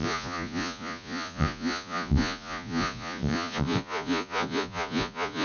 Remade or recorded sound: remade